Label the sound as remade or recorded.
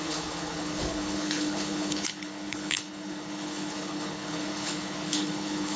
remade